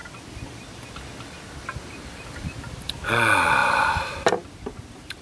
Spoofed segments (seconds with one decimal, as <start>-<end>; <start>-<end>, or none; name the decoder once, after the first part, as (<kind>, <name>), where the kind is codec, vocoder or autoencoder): 3.6-4.1 (vocoder, BigVGAN v2)